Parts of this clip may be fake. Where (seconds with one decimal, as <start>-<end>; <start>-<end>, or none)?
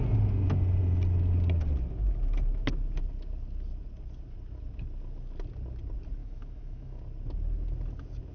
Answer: 6.2-7.0